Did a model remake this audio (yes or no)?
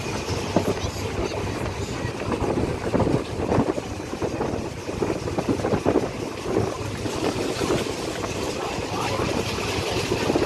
no